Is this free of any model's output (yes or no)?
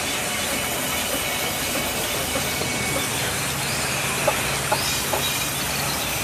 yes